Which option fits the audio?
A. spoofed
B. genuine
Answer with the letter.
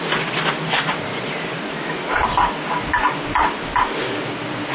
B